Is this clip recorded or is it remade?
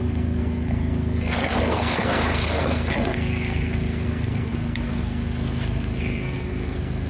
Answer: remade